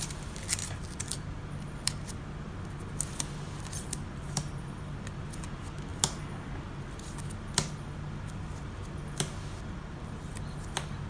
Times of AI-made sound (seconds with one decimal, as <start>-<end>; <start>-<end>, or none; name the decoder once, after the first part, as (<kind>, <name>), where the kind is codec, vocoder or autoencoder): none